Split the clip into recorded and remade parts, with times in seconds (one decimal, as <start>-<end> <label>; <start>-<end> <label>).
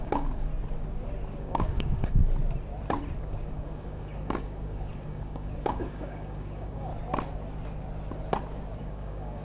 0.0-0.5 remade; 0.5-1.4 recorded; 1.4-2.2 remade; 2.2-3.2 recorded; 3.2-6.9 remade; 6.9-8.8 recorded; 8.8-9.4 remade